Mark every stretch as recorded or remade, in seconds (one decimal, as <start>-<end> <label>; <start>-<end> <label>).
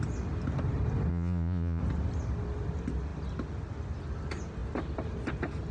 0.0-1.1 recorded; 1.1-1.8 remade; 1.8-5.7 recorded